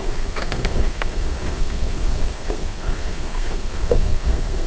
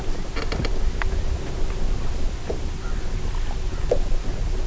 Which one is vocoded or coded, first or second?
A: first